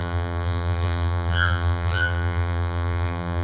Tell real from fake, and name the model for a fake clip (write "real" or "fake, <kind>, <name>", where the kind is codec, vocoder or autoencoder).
fake, vocoder, BigVGAN v2